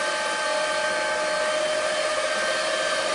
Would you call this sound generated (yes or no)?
no